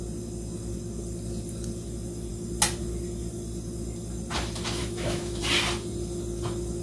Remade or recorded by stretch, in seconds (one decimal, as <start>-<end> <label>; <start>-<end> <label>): 0.0-4.8 recorded; 4.8-5.4 remade; 5.4-6.8 recorded